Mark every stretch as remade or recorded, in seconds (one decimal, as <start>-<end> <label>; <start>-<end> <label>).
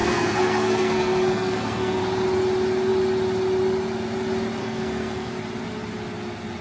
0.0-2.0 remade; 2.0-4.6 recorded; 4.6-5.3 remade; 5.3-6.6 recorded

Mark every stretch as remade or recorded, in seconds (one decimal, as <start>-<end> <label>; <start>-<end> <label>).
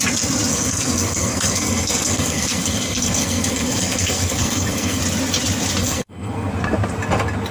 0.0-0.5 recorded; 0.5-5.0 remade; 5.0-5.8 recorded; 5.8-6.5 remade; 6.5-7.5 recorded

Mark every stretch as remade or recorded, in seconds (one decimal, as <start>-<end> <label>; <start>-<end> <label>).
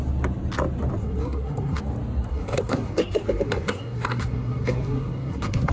0.0-1.0 recorded; 1.0-1.8 remade; 1.8-2.3 recorded; 2.3-5.7 remade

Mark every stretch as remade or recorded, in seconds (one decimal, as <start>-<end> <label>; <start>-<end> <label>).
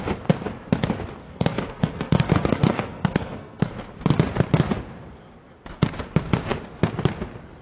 0.0-1.2 recorded; 1.2-3.8 remade; 3.8-7.6 recorded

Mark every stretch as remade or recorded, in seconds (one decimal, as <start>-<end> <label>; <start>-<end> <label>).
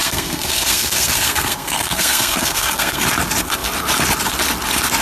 0.0-3.0 remade; 3.0-5.0 recorded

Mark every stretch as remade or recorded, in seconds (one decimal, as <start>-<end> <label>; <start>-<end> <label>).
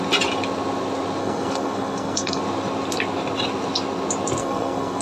0.0-1.2 recorded; 1.2-2.4 remade; 2.4-4.4 recorded; 4.4-5.0 remade